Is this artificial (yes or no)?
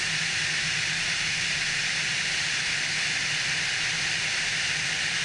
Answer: no